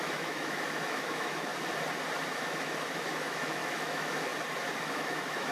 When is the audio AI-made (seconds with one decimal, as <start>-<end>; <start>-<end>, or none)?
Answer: 0.0-1.5; 2.3-4.3; 4.8-5.5